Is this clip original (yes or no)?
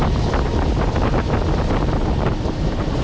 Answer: yes